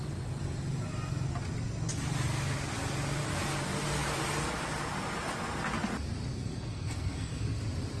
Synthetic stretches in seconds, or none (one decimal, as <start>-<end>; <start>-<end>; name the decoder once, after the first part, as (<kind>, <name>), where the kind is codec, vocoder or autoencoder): 6.3-7.6 (codec, SNAC)